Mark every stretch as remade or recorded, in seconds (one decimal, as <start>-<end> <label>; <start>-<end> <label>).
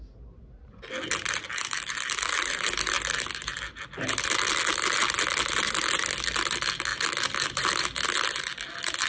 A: 0.0-9.1 recorded